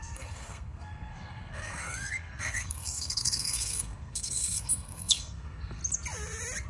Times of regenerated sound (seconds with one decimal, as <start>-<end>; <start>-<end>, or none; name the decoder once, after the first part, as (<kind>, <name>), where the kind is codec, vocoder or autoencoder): 0.0-5.8 (codec, SNAC)